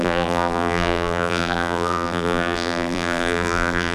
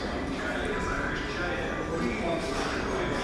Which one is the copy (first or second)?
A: first